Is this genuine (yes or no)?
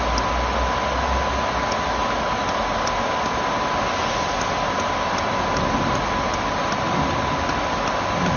yes